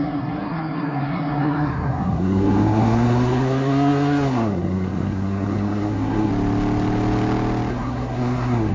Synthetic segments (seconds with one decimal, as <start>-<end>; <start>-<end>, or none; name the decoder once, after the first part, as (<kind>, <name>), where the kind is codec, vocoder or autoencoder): 0.0-6.3 (codec, SNAC); 7.7-8.7